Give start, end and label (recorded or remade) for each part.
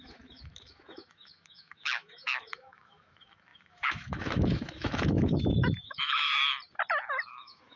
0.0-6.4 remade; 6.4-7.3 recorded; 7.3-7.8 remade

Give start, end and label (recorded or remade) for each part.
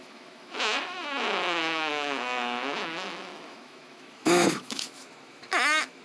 0.0-6.0 remade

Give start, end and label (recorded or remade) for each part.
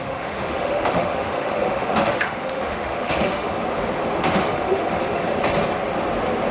0.0-3.5 remade; 3.5-4.2 recorded; 4.2-5.2 remade; 5.2-6.5 recorded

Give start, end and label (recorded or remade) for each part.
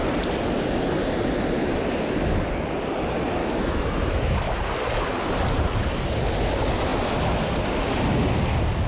0.0-3.4 recorded; 3.4-4.6 remade; 4.6-8.9 recorded